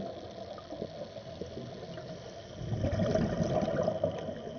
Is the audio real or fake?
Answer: real